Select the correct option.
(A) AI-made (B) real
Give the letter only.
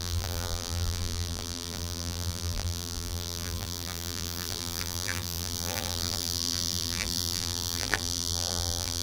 A